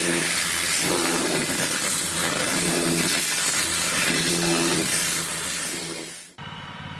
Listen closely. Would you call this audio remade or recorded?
recorded